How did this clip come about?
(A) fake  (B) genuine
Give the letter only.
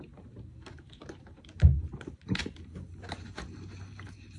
A